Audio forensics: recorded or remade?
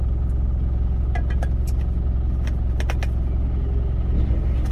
recorded